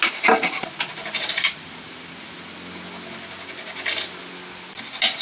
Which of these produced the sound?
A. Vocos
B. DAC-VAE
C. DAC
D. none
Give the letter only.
D